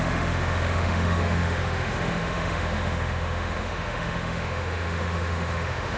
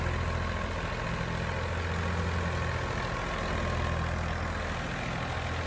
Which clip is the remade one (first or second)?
first